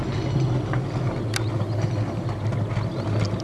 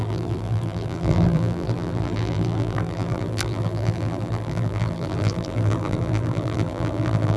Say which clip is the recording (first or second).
first